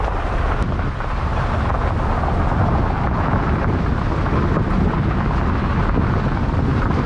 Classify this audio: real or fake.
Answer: real